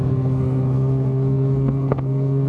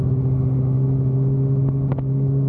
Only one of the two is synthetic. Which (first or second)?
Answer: first